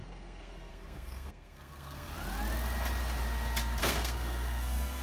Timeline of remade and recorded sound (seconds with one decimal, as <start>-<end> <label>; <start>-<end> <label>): 0.0-2.1 remade; 2.1-3.8 recorded; 3.8-5.0 remade